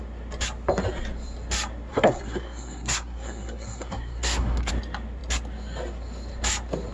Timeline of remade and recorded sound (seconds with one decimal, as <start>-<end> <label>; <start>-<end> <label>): 0.0-1.9 recorded; 1.9-4.7 remade; 4.7-6.9 recorded